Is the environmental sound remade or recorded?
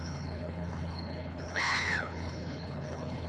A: remade